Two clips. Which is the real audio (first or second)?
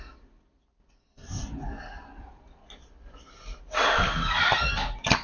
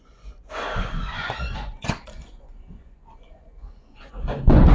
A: first